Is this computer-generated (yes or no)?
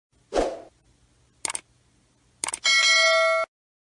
no